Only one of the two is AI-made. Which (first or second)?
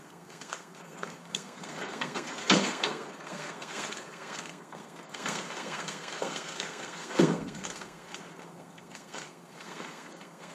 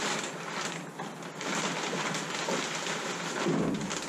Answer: first